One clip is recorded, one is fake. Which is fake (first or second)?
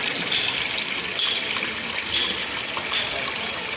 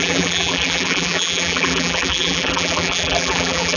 second